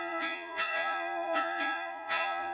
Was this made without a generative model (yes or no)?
no